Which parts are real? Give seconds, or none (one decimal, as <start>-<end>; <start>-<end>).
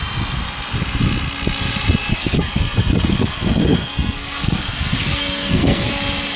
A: 0.0-2.1; 5.9-6.4